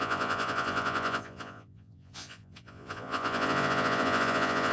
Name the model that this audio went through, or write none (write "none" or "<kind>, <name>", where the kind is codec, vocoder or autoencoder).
vocoder, Vocos